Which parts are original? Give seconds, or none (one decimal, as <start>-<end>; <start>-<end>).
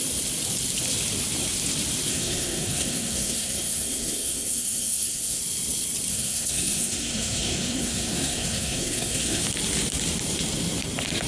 0.0-2.1; 5.4-6.1; 9.4-11.3